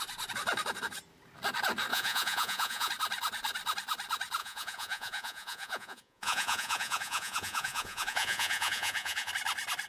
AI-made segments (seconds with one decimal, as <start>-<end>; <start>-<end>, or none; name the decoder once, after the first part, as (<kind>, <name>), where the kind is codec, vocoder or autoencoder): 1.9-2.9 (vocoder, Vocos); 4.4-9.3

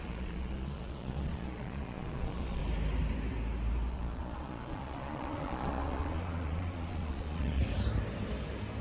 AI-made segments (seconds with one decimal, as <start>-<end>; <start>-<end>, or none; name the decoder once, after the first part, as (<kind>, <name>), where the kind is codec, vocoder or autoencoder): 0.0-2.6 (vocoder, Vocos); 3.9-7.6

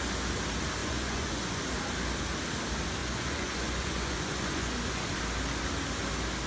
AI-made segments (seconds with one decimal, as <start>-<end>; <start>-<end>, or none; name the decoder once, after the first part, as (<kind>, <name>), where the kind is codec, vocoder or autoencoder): 0.8-1.6 (vocoder, Vocos); 3.0-5.1

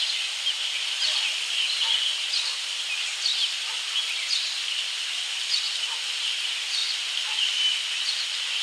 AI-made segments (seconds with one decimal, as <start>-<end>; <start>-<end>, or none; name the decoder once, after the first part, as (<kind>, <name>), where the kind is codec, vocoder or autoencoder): none

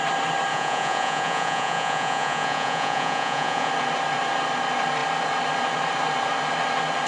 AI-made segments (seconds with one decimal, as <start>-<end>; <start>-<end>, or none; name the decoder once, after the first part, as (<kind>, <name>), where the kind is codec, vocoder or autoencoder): 0.5-3.7 (vocoder, Vocos)